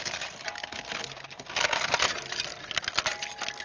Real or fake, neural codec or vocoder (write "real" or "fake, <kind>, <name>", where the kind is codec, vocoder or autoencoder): real